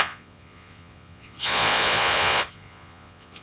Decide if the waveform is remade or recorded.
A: remade